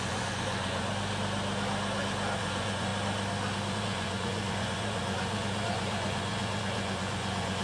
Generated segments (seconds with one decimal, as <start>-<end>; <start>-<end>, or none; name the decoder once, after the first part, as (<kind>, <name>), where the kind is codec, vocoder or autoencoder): 0.0-0.9 (vocoder, Vocos); 2.4-2.9; 3.7-7.6